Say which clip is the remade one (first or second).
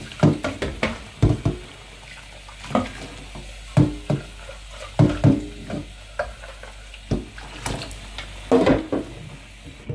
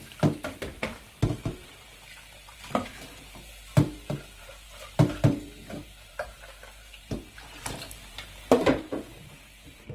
second